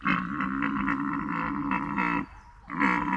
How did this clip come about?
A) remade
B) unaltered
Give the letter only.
B